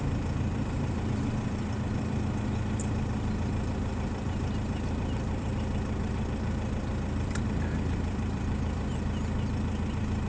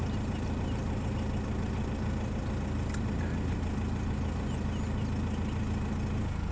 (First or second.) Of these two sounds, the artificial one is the first